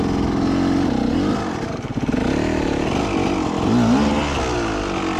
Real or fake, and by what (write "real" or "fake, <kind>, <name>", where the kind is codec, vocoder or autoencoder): real